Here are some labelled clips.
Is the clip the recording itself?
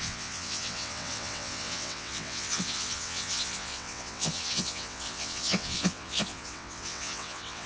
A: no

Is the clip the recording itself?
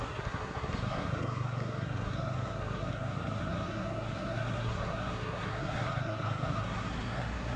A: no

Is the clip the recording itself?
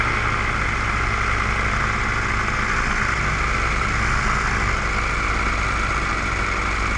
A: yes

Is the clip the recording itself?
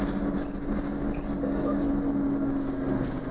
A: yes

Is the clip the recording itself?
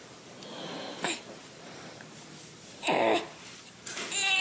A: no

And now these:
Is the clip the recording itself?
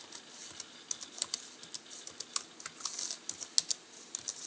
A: yes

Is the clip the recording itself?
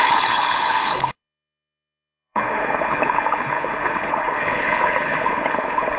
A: no